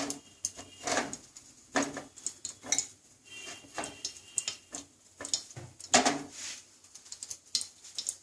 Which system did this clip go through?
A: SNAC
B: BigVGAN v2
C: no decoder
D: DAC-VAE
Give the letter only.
C